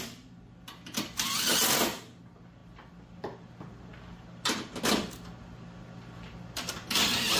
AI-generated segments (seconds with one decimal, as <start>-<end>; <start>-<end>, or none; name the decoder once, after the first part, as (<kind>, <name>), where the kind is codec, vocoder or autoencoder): none

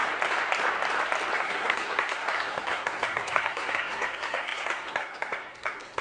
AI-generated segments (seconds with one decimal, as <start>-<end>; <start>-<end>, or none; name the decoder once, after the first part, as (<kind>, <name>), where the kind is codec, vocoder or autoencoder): 1.4-6.0 (codec, SNAC)

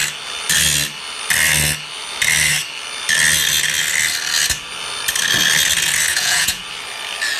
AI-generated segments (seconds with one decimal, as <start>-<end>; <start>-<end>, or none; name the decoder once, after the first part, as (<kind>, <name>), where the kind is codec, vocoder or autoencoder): 6.1-6.6 (vocoder, Vocos)

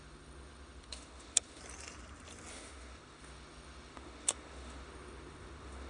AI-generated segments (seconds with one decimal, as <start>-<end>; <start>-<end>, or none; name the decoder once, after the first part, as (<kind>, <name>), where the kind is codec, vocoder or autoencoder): 0.0-1.6 (autoencoder, DAC-VAE); 2.5-5.9